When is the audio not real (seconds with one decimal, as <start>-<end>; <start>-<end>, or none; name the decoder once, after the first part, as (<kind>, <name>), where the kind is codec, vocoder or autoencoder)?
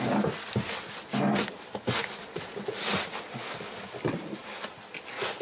none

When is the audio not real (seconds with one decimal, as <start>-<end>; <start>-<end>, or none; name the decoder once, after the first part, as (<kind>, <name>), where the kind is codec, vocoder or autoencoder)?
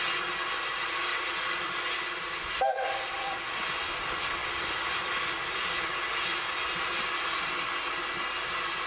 1.1-1.8 (vocoder, BigVGAN v2)